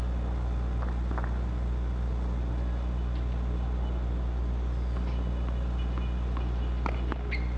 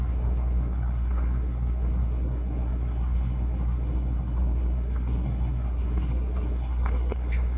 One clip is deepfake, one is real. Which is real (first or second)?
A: first